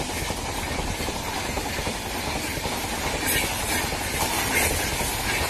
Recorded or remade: recorded